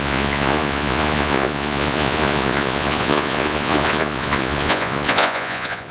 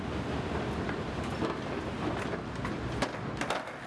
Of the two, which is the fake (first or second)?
first